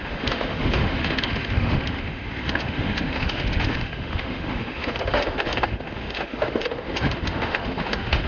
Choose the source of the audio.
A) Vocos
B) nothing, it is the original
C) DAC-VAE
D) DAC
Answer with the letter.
C